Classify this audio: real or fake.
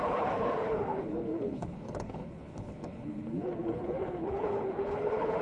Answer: fake